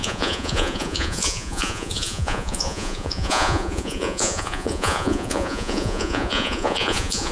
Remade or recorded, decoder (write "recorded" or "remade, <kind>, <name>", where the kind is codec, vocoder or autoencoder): remade, vocoder, Vocos